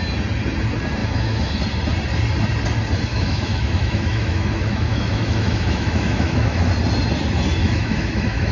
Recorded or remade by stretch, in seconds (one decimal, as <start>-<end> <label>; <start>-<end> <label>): 0.0-1.0 recorded; 1.0-1.6 remade; 1.6-3.1 recorded; 3.1-6.7 remade; 6.7-7.6 recorded; 7.6-8.5 remade